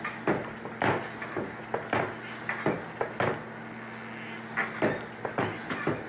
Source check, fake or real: real